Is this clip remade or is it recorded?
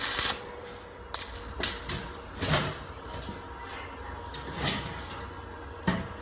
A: recorded